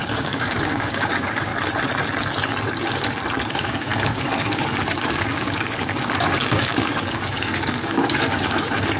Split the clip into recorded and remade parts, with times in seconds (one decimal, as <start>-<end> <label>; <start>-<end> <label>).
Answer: 0.0-1.5 remade; 1.5-3.5 recorded; 3.5-9.0 remade